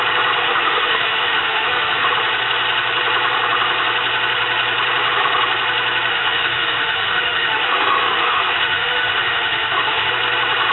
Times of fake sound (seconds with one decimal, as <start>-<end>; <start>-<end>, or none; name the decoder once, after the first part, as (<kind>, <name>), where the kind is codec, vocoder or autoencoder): 0.4-2.1 (autoencoder, DAC-VAE); 6.1-10.1